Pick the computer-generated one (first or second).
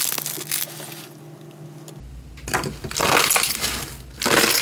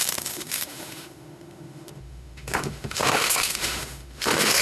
second